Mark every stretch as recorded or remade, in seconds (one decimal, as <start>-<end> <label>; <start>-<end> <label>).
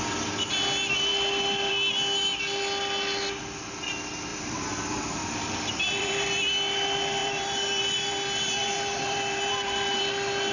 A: 0.0-4.3 recorded; 4.3-6.4 remade; 6.4-7.2 recorded; 7.2-10.0 remade; 10.0-10.5 recorded